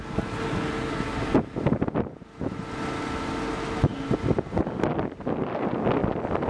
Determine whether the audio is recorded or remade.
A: recorded